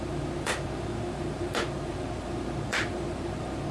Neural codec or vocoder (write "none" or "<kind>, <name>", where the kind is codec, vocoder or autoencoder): vocoder, BigVGAN v2